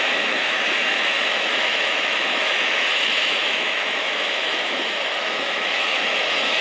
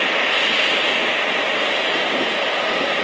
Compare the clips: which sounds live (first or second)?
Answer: second